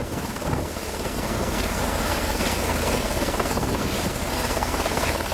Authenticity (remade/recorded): remade